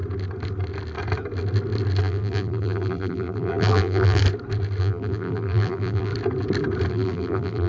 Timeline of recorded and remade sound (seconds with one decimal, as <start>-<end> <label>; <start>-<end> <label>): 0.0-2.0 recorded; 2.0-4.2 remade; 4.2-4.8 recorded; 4.8-6.1 remade; 6.1-6.9 recorded; 6.9-7.7 remade